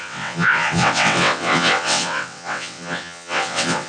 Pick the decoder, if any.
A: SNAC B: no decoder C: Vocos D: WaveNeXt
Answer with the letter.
D